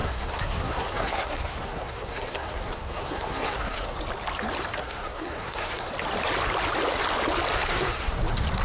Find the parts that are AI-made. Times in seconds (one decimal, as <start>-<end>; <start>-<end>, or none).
0.0-4.0; 4.8-5.9; 7.7-8.2